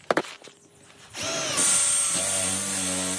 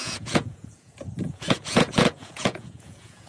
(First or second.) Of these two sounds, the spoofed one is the second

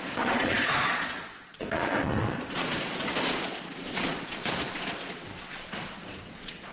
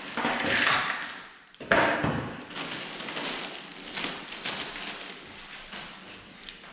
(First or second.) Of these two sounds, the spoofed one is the first